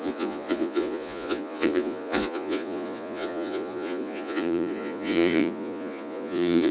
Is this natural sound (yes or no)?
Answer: no